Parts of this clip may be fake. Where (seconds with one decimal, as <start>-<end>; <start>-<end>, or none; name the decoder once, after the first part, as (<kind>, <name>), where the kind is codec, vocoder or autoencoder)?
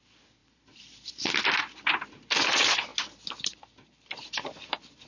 0.0-2.9 (vocoder, BigVGAN v2); 3.6-5.1